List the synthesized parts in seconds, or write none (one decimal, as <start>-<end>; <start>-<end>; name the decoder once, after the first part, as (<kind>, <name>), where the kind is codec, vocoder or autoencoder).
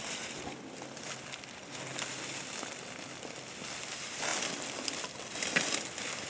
none